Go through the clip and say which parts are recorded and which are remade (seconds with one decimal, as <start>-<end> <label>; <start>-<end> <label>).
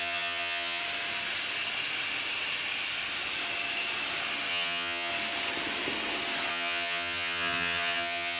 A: 0.0-0.8 remade; 0.8-4.5 recorded; 4.5-5.1 remade; 5.1-6.5 recorded; 6.5-8.4 remade